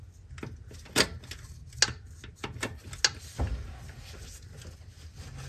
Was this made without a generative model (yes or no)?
yes